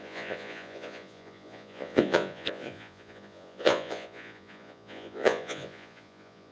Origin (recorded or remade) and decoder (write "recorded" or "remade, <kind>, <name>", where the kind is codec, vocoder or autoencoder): remade, vocoder, Vocos